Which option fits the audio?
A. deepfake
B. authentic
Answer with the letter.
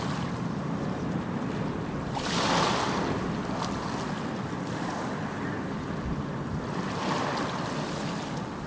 B